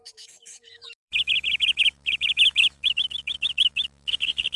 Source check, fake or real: fake